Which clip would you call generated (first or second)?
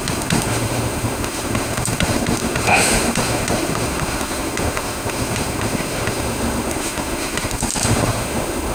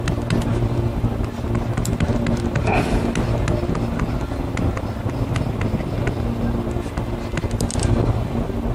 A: first